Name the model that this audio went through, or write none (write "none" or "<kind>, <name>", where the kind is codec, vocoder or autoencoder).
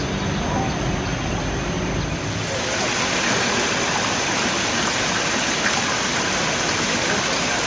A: none